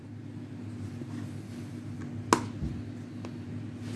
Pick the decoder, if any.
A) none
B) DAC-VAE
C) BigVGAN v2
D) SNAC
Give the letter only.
A